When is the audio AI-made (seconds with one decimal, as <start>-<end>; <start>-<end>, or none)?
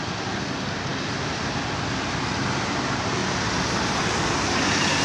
0.9-1.6; 3.2-4.0